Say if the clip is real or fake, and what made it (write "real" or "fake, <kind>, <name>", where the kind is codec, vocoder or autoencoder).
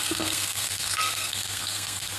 fake, codec, SNAC